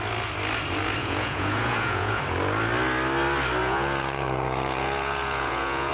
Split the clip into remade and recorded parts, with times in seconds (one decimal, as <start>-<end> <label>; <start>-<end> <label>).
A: 0.0-1.0 recorded; 1.0-2.2 remade; 2.2-3.6 recorded; 3.6-5.9 remade